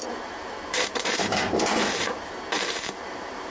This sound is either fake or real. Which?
fake